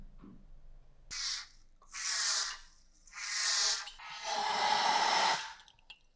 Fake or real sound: real